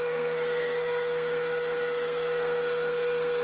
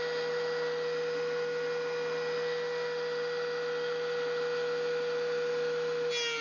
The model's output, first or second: first